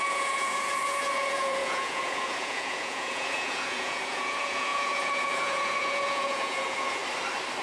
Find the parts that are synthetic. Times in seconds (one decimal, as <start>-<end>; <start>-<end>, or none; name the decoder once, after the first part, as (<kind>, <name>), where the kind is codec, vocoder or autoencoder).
0.0-7.0 (vocoder, Vocos)